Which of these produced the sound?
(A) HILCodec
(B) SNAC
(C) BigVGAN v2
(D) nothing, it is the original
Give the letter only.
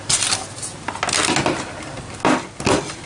D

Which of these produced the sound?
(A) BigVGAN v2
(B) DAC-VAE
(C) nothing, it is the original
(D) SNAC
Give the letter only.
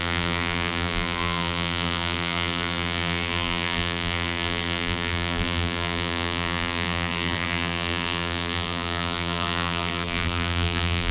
A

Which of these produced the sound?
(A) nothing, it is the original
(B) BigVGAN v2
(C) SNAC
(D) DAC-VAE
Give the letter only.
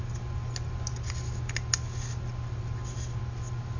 A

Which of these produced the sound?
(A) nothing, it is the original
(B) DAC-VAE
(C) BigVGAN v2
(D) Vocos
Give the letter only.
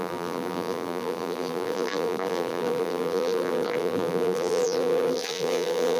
C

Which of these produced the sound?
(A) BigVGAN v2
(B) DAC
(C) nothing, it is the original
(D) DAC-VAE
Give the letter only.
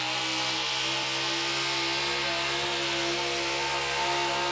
C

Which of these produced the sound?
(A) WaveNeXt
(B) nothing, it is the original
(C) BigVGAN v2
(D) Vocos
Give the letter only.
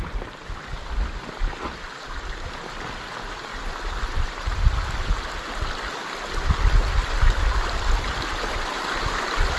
B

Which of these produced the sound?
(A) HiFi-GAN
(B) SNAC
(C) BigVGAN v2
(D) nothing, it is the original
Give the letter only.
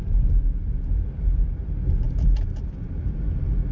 D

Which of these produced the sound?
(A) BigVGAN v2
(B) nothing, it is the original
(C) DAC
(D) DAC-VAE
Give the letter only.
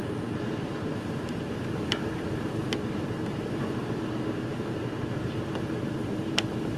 A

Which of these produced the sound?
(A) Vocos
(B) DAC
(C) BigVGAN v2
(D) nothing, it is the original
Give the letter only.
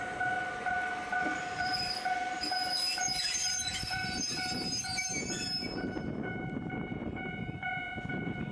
C